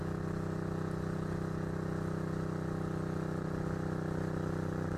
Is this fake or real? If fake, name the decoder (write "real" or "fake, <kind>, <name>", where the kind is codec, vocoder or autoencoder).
real